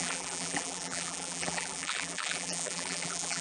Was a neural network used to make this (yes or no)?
yes